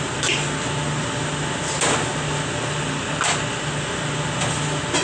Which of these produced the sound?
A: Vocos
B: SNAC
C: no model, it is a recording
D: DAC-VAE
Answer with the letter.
C